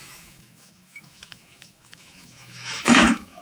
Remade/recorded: remade